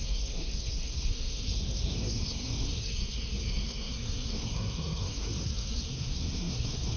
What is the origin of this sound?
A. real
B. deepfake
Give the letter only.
B